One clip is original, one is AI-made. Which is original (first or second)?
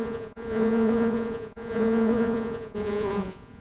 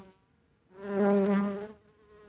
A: second